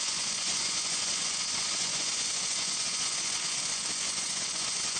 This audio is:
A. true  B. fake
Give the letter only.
B